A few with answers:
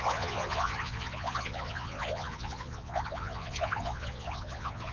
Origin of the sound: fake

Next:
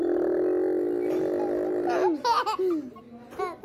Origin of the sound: real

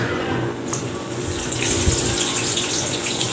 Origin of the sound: fake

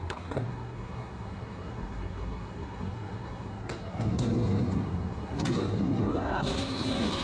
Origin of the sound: fake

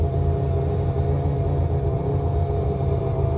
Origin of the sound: real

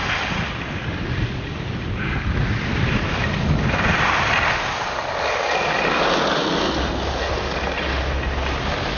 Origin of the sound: real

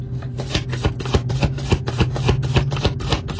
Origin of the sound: real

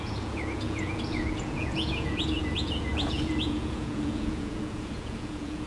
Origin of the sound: fake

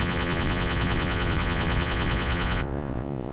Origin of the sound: fake